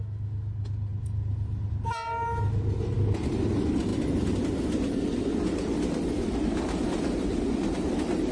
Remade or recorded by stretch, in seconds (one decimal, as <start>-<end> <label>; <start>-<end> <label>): 0.0-8.3 recorded